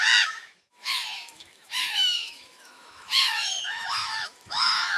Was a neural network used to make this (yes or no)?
yes